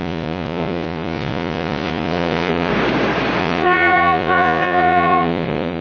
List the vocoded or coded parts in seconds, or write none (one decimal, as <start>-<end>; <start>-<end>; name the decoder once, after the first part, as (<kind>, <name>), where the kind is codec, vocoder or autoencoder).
0.0-2.7 (vocoder, Vocos); 3.4-5.8